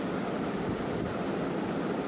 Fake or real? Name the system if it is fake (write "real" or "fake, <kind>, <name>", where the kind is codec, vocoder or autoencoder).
real